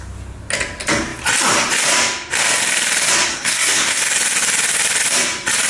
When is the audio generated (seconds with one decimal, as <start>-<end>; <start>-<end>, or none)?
3.3-4.0